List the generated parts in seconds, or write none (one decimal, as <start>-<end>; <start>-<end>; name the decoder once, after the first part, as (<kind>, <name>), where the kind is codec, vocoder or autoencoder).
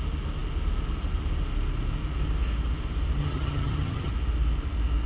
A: 3.2-4.1 (vocoder, HiFi-GAN)